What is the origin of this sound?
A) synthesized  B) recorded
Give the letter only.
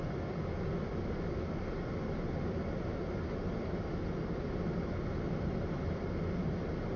B